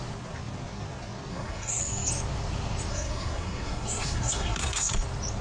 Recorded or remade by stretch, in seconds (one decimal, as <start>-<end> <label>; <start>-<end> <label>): 0.0-1.3 recorded; 1.3-1.8 remade; 1.8-2.9 recorded; 2.9-4.9 remade; 4.9-5.4 recorded